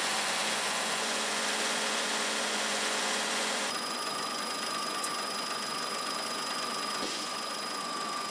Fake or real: fake